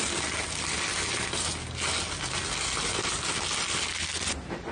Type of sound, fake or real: real